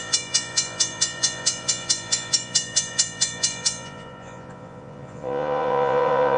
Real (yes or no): no